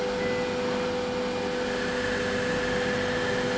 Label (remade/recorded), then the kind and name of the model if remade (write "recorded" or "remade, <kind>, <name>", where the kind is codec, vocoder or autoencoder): recorded